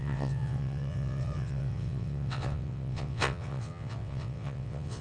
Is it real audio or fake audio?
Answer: fake